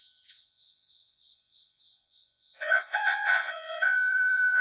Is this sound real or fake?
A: fake